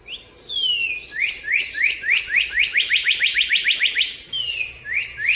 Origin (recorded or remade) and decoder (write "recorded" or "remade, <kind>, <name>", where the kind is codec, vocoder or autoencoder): recorded